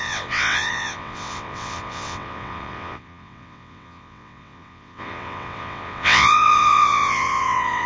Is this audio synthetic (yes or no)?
yes